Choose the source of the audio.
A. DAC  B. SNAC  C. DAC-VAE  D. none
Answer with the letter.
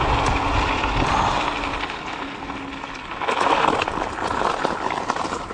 D